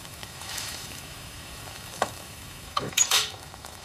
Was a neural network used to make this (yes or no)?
yes